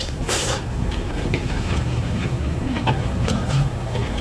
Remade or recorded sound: remade